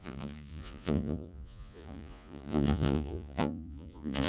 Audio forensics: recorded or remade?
remade